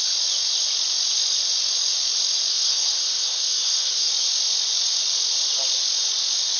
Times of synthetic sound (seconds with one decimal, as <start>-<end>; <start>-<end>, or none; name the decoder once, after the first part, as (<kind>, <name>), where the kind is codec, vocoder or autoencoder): 2.5-4.1 (codec, SNAC)